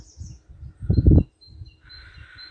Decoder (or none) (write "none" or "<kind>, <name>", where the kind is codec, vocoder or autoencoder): none